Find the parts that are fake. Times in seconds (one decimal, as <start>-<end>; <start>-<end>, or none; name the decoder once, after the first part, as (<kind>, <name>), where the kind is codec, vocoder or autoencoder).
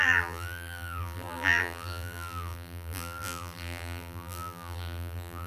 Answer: 0.0-5.5 (vocoder, BigVGAN v2)